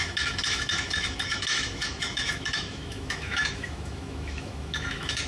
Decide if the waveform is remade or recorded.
remade